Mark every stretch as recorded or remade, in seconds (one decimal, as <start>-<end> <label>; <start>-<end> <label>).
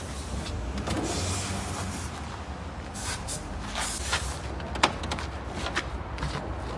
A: 0.0-6.8 recorded